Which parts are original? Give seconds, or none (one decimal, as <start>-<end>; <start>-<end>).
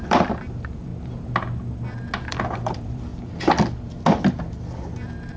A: 0.9-2.3; 3.1-5.4